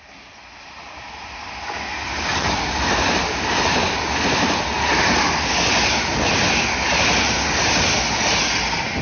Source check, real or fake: real